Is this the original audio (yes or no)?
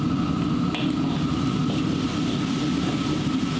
yes